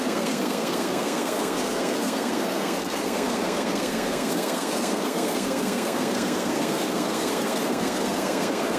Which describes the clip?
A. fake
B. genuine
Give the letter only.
A